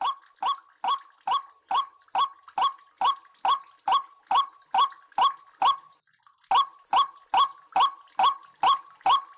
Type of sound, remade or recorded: recorded